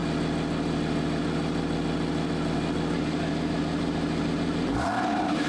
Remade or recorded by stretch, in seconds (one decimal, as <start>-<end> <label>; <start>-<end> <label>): 0.0-5.5 recorded